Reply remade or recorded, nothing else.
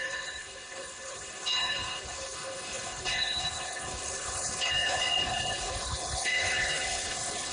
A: remade